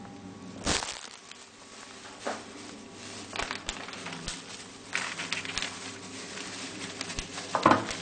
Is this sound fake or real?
real